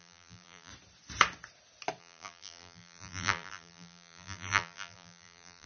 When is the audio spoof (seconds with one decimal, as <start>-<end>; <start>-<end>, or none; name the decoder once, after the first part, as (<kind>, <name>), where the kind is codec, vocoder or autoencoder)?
0.0-0.7 (vocoder, BigVGAN v2); 2.0-5.7